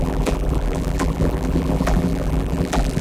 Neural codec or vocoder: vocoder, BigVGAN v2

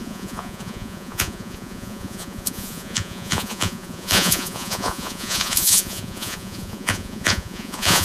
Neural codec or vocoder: vocoder, Vocos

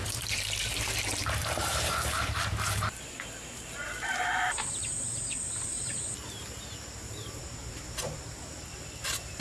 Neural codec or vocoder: vocoder, BigVGAN v2